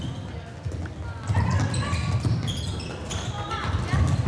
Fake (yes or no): no